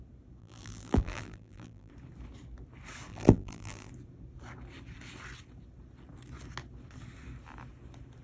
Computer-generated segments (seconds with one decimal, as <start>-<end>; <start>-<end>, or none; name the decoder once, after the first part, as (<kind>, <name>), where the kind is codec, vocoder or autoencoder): 0.4-1.9 (vocoder, BigVGAN v2); 3.1-3.9